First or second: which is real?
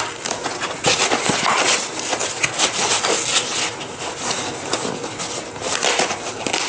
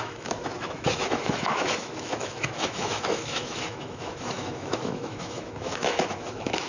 first